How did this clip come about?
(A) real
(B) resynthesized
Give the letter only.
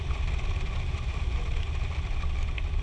A